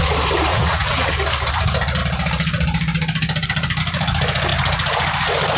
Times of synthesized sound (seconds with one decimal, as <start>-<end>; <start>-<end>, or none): 0.5-1.1